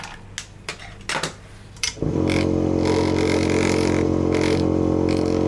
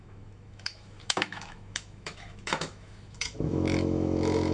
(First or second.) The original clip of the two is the first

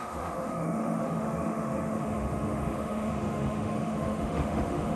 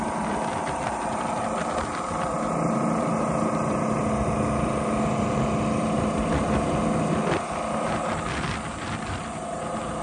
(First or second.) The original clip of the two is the second